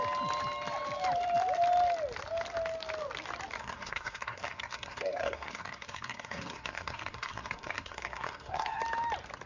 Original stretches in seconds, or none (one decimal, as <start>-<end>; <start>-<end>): 0.0-3.6; 8.8-9.5